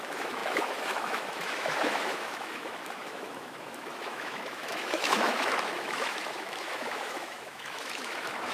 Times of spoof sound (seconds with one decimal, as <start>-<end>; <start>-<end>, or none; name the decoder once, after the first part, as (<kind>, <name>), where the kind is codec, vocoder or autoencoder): 0.0-8.5 (autoencoder, DAC-VAE)

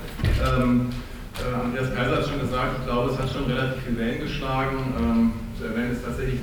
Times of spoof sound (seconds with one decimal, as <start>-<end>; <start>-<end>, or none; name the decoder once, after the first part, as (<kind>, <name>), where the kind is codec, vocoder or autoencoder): 5.5-6.4 (autoencoder, DAC-VAE)

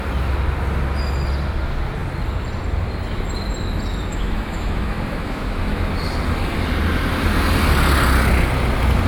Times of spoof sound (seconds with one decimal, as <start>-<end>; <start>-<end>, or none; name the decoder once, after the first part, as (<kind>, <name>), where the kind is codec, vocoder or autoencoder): 4.1-5.9 (autoencoder, DAC-VAE)